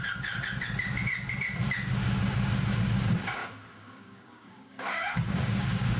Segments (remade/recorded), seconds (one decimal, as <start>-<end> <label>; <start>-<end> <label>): 0.0-3.4 recorded; 3.4-6.0 remade